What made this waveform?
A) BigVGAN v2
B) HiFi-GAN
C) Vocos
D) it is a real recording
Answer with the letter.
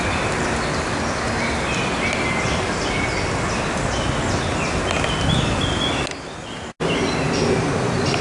D